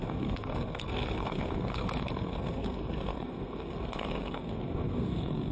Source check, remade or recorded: remade